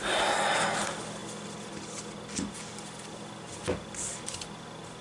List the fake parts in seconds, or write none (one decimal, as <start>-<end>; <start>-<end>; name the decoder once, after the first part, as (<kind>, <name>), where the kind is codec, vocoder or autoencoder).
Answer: none